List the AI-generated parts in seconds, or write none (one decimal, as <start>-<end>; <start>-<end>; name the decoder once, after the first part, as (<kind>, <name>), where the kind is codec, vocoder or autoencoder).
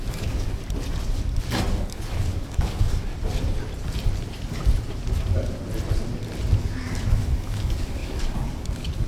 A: 0.0-0.6 (codec, DAC); 1.7-3.1; 6.6-9.1